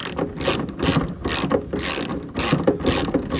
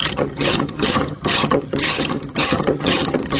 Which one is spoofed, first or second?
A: second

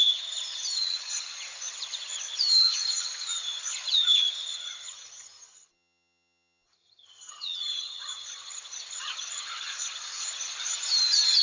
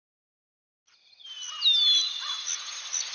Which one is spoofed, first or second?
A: first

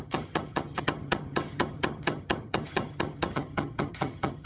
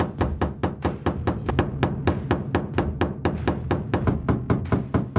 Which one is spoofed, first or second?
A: first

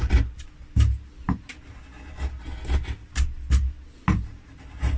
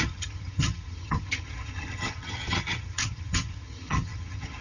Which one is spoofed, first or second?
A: second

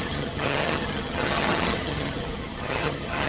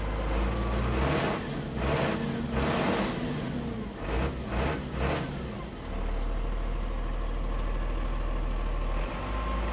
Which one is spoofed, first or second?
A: first